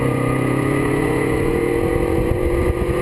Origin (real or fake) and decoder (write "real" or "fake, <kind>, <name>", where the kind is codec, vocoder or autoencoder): fake, vocoder, Vocos